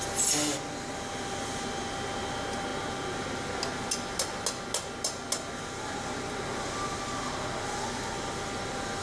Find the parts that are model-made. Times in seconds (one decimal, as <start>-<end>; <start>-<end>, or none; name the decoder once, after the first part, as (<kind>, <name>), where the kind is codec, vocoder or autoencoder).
none